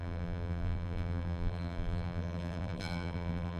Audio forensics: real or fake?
fake